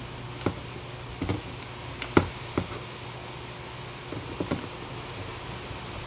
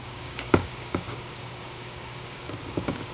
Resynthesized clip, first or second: second